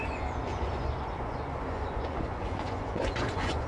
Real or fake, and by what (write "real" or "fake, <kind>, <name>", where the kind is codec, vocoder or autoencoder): fake, vocoder, Vocos